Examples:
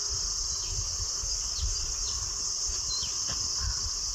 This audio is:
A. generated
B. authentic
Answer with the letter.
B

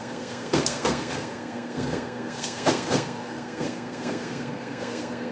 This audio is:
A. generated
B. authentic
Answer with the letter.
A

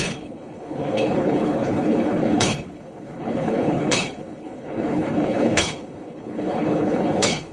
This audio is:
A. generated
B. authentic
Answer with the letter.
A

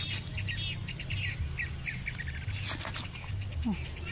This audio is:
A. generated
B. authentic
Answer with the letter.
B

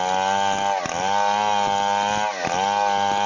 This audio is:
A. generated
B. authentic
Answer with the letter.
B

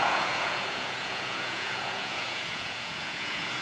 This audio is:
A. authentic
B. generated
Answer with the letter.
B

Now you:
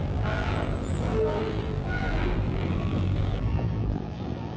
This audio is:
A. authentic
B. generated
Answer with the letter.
B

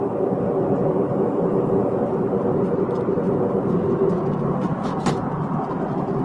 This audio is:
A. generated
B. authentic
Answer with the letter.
B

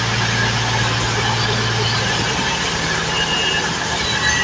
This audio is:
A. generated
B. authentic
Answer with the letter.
B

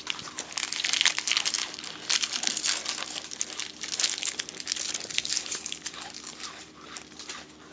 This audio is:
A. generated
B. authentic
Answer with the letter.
B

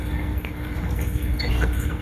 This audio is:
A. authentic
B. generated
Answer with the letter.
B